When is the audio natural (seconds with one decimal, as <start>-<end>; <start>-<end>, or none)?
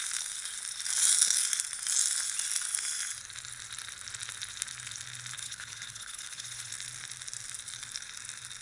0.0-5.4; 6.7-8.6